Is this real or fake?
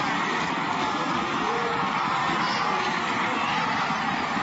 real